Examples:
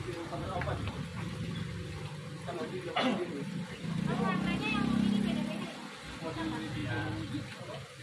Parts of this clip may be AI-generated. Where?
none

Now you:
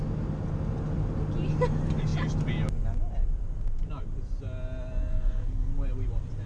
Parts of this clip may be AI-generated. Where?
5.0-5.7 (codec, SNAC)

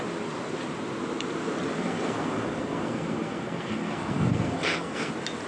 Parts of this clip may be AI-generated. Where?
1.8-5.1 (codec, SNAC)

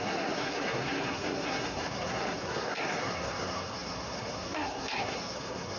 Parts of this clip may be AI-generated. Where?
0.0-5.8 (codec, SNAC)

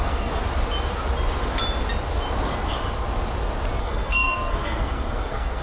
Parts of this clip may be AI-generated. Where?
0.0-0.4 (codec, SNAC); 3.8-5.6